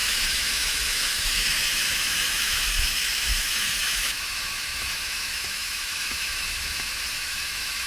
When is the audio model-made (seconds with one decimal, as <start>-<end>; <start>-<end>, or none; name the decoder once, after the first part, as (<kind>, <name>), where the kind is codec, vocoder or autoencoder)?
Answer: 0.0-7.9 (autoencoder, DAC-VAE)